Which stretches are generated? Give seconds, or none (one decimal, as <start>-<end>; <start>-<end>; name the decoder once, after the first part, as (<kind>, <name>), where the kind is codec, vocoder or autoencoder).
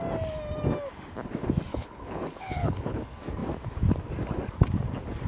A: 1.7-3.0 (codec, HILCodec)